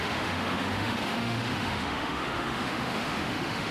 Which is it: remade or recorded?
remade